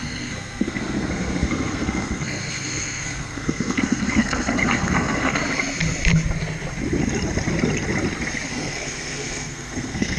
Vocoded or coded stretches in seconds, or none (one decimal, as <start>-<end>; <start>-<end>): 0.0-5.4; 8.5-10.2